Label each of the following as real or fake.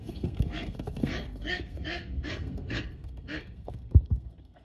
fake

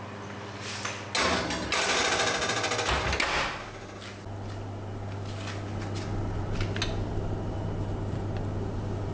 real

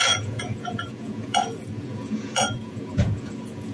fake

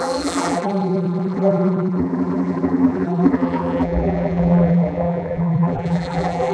fake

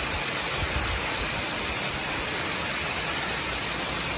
real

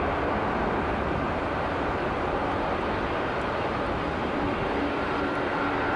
real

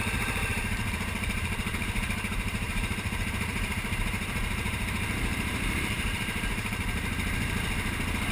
fake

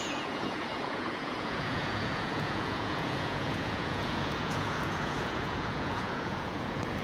fake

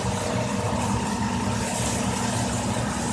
real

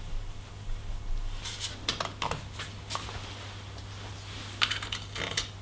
real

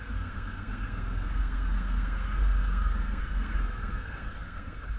fake